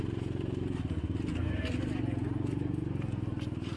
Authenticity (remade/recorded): recorded